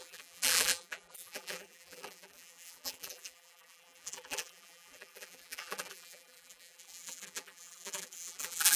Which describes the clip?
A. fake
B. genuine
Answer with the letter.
A